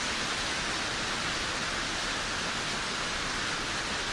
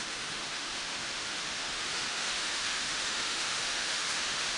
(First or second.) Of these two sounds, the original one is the first